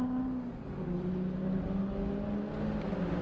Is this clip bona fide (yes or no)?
yes